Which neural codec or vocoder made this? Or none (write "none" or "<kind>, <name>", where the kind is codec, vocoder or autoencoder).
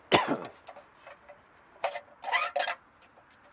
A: none